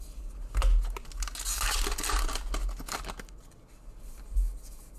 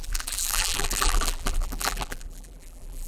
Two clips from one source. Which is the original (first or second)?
first